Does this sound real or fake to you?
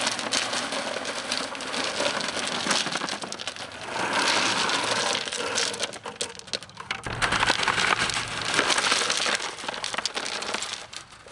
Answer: real